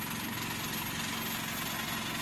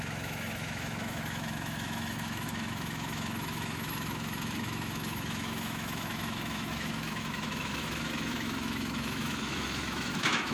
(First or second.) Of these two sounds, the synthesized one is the second